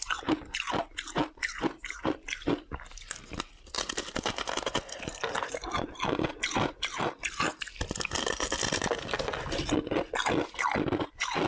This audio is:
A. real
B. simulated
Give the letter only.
A